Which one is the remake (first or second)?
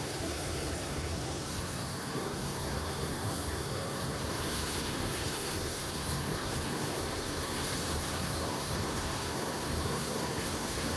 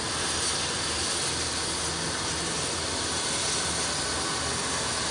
first